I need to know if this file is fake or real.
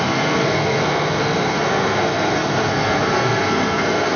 fake